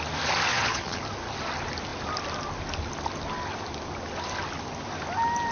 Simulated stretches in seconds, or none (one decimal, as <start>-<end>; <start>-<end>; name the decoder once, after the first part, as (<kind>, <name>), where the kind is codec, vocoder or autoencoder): 0.5-1.0 (vocoder, Vocos)